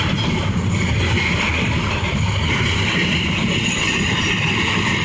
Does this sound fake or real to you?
real